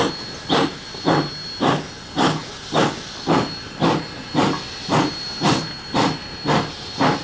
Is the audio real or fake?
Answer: real